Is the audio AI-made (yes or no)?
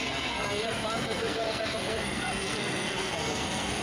yes